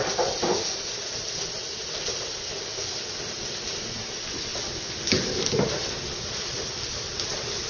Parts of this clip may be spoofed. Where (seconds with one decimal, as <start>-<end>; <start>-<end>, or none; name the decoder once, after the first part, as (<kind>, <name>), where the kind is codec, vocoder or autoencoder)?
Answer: none